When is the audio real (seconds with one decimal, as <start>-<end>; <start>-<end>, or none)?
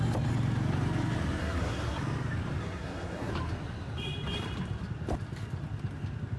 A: 0.0-1.4; 2.0-2.6; 3.3-6.4